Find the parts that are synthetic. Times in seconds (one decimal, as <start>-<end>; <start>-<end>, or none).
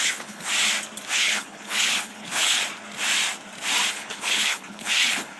0.0-0.5; 1.1-2.6; 3.9-5.4